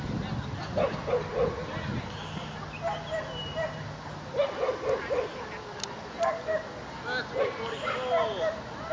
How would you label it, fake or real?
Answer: real